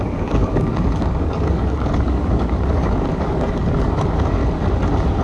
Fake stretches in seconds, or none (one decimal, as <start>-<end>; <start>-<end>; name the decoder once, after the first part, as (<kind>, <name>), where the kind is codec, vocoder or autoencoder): 0.0-4.4 (codec, DAC)